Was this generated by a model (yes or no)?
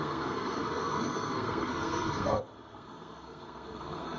yes